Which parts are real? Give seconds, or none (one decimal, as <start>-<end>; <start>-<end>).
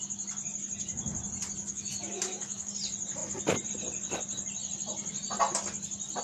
0.0-1.6; 2.7-6.2